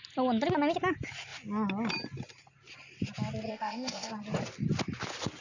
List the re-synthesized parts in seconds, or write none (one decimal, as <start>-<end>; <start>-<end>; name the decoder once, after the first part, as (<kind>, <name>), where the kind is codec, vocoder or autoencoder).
3.5-4.1 (codec, ZipCodec)